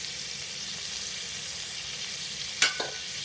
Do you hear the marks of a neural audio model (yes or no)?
no